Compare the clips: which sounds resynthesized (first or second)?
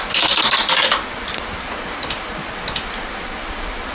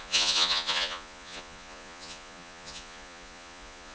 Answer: second